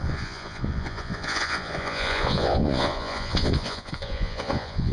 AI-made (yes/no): yes